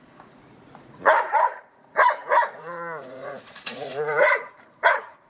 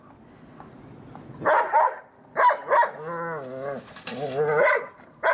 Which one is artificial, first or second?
first